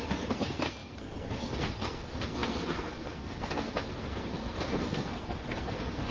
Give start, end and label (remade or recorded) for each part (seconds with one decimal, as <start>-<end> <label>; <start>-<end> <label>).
0.0-6.1 remade